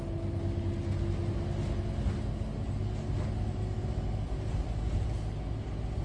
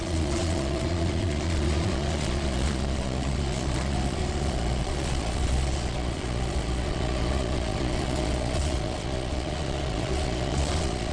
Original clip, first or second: first